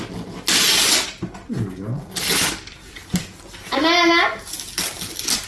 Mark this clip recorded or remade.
recorded